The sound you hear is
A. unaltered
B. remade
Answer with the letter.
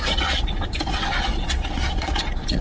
B